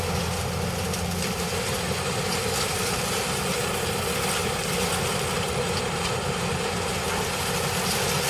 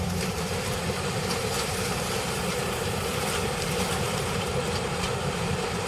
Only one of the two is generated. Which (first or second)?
second